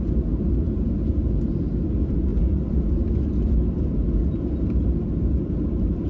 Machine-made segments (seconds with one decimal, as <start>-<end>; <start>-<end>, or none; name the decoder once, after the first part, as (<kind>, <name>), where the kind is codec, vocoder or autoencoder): none